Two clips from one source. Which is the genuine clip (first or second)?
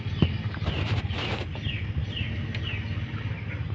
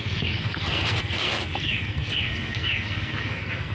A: first